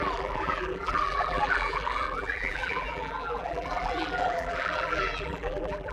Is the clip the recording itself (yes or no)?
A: no